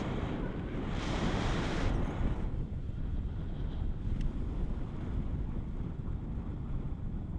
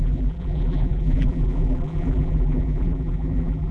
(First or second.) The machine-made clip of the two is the second